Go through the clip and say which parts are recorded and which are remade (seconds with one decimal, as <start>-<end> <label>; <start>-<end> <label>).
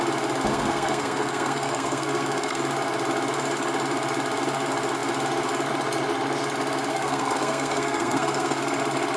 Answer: 0.0-0.5 recorded; 0.5-2.6 remade; 2.6-6.9 recorded; 6.9-8.6 remade; 8.6-9.2 recorded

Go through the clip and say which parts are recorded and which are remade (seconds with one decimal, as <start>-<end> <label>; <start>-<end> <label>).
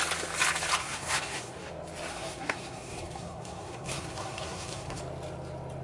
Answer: 0.0-0.8 recorded; 0.8-1.7 remade; 1.7-2.1 recorded; 2.1-5.0 remade; 5.0-5.8 recorded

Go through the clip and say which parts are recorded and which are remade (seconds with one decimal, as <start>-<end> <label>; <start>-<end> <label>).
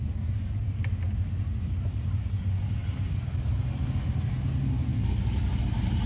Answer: 0.0-6.1 recorded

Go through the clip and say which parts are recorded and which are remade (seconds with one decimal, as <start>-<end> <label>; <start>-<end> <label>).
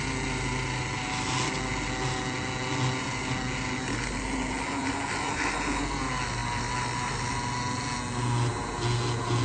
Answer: 0.0-9.4 recorded